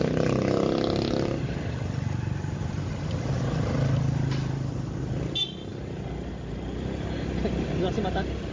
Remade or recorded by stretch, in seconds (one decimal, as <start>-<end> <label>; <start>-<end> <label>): 0.0-8.5 recorded